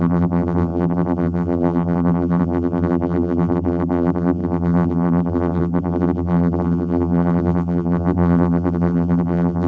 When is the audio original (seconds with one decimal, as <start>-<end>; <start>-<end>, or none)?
none